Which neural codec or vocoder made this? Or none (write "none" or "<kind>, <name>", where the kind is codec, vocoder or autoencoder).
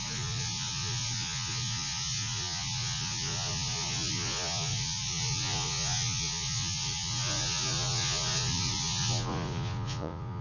vocoder, Vocos